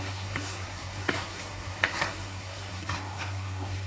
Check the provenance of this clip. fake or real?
fake